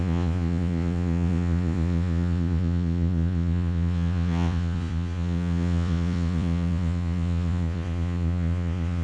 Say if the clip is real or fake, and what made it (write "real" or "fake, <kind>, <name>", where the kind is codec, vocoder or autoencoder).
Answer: fake, vocoder, Vocos